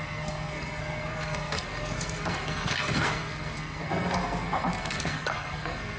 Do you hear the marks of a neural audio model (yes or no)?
yes